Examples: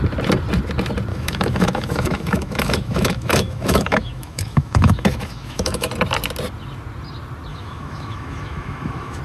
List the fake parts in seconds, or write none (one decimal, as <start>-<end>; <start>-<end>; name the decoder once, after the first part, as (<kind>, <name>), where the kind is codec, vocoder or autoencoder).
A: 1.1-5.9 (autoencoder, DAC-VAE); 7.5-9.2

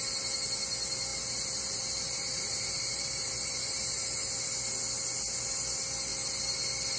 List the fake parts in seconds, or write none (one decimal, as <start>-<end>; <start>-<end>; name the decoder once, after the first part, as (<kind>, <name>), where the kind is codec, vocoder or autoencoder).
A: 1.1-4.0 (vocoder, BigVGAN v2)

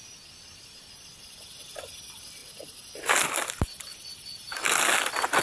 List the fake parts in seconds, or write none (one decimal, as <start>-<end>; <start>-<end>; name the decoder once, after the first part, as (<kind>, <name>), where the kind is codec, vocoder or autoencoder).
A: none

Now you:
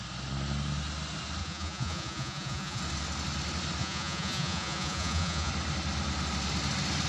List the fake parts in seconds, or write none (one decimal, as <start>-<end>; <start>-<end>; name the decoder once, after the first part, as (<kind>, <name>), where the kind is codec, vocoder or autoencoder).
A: 1.4-2.8 (vocoder, Vocos); 3.8-5.5

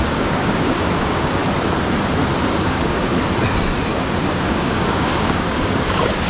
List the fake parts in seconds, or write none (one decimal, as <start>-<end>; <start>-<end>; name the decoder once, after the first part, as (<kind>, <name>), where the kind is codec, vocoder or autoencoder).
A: 0.0-1.4 (codec, DAC); 2.5-3.1; 4.3-6.3